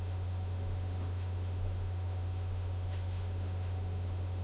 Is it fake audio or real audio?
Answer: fake